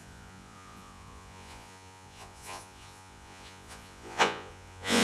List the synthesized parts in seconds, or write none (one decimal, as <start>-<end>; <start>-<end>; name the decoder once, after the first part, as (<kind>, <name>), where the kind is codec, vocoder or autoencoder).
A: 0.0-5.0 (vocoder, Vocos)